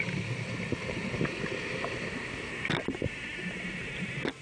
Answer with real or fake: real